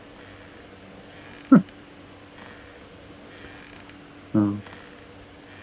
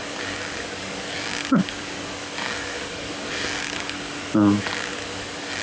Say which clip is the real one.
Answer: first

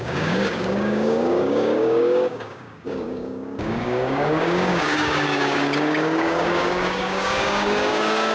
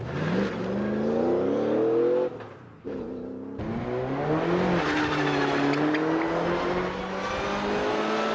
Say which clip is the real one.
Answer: second